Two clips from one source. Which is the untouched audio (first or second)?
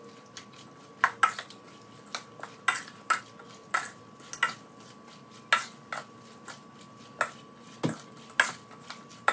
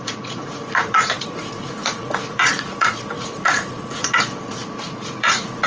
first